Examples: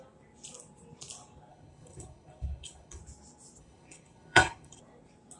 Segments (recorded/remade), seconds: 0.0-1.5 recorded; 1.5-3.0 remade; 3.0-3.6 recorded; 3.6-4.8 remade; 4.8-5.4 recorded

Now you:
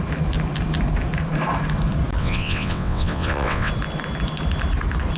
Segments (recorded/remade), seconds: 0.0-2.2 recorded; 2.2-3.7 remade; 3.7-5.2 recorded

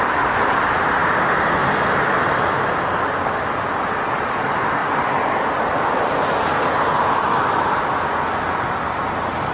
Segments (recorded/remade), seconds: 0.0-9.5 recorded

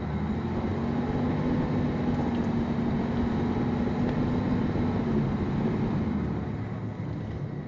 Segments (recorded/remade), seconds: 0.0-7.7 recorded

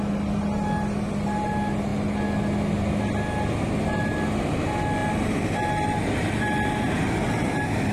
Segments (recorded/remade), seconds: 0.0-7.9 recorded

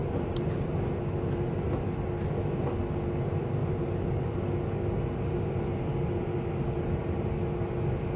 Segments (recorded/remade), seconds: 0.0-8.2 recorded

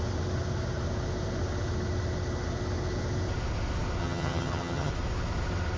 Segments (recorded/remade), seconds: 0.0-4.0 recorded; 4.0-4.9 remade; 4.9-5.8 recorded